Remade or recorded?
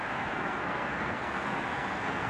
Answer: remade